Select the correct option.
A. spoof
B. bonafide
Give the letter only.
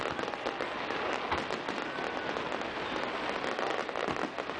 B